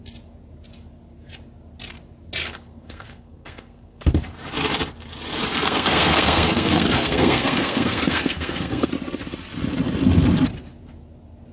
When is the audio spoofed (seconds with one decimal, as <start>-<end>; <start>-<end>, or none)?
2.4-4.1; 5.5-8.9

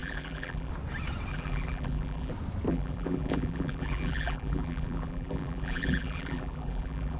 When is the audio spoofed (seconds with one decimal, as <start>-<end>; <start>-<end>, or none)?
0.0-0.7; 1.3-2.3; 2.7-7.2

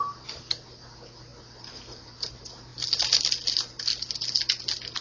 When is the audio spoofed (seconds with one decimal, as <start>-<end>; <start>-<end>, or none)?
none

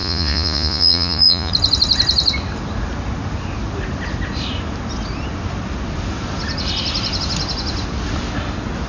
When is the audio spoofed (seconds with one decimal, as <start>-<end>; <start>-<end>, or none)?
0.0-1.5

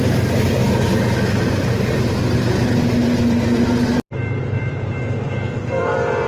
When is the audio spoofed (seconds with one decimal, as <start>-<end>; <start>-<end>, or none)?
0.0-0.6; 4.4-6.3